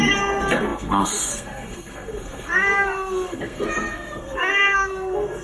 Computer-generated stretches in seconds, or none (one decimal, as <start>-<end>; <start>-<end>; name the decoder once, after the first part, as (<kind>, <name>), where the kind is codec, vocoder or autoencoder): 0.0-5.4 (codec, SNAC)